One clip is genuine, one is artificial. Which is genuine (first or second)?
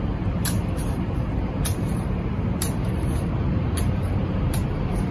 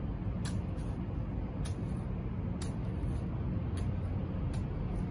second